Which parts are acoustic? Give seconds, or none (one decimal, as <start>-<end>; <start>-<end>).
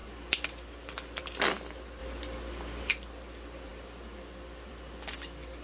0.0-5.6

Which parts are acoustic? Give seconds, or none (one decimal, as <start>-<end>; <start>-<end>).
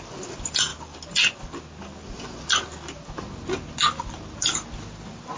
0.0-5.4